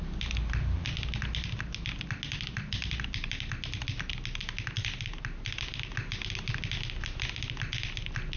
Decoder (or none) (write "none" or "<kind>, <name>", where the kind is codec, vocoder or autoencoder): none